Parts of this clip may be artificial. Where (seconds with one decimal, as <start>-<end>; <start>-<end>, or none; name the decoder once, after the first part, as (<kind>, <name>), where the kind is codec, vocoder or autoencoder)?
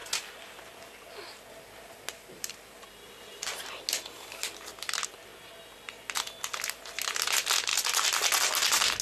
none